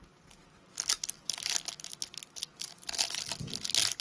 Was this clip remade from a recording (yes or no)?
no